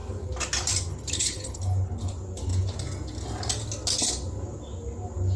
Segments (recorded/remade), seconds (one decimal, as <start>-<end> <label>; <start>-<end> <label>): 0.0-0.9 recorded; 0.9-2.1 remade; 2.1-5.4 recorded